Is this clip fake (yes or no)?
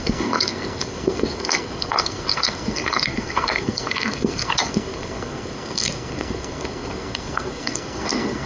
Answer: yes